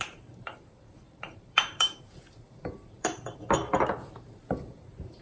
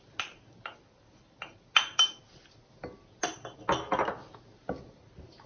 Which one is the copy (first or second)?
first